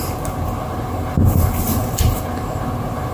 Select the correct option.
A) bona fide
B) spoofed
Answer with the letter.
A